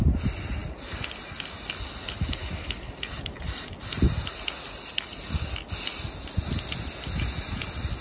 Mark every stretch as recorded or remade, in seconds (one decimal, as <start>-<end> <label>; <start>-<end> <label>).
0.0-8.0 recorded